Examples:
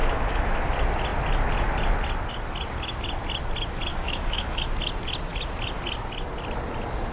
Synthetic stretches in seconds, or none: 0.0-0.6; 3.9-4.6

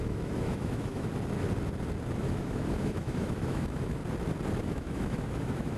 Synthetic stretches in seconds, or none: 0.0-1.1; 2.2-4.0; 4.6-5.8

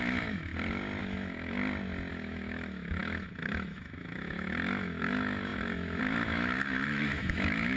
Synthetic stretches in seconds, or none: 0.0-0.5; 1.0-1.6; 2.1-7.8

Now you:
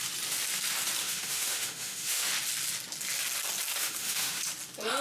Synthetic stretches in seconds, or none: 1.0-2.3; 3.8-4.4

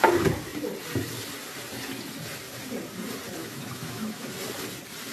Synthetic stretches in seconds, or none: 3.4-4.3

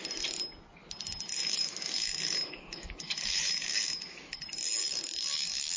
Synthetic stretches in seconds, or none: 1.4-4.4